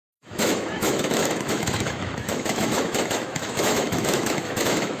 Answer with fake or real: fake